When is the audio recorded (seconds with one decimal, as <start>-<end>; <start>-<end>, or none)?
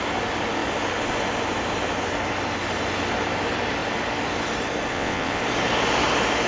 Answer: 0.0-4.9; 5.4-6.5